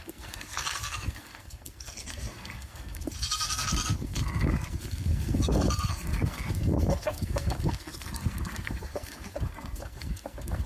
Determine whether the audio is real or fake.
fake